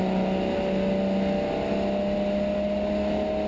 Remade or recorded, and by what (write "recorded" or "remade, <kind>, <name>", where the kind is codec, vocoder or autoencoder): recorded